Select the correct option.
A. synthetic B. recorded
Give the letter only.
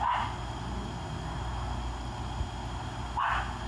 B